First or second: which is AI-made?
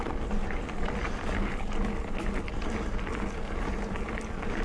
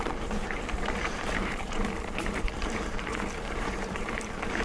second